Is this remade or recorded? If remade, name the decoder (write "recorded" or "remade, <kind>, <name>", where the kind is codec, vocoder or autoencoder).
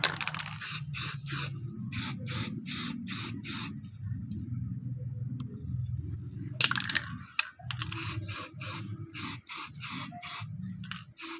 recorded